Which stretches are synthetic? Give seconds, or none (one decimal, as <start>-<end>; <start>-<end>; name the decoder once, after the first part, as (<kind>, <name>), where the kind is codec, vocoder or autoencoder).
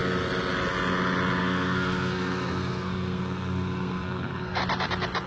1.4-4.6 (codec, SNAC)